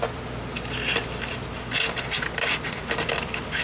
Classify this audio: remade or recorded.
recorded